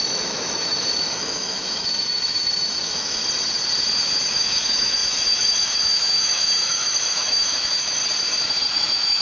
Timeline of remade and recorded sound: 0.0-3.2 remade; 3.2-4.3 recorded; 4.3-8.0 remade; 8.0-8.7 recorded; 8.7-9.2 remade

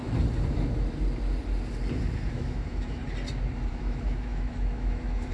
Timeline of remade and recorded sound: 0.0-2.3 recorded; 2.3-3.0 remade; 3.0-3.7 recorded; 3.7-5.3 remade

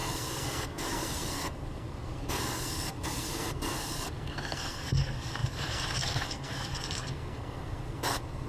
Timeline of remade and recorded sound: 0.0-8.5 remade

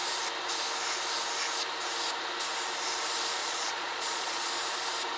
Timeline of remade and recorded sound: 0.0-3.4 recorded; 3.4-4.5 remade; 4.5-5.2 recorded